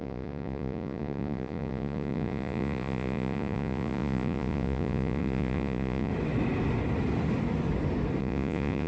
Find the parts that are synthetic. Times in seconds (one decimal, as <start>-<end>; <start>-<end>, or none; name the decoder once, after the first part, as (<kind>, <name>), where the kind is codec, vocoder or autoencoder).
0.0-6.1 (vocoder, Vocos); 8.2-8.9